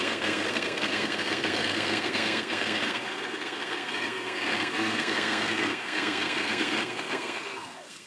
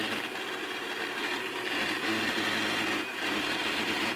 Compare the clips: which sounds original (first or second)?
second